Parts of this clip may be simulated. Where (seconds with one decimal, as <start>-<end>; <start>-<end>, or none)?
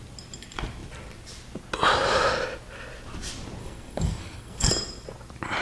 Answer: 3.6-4.7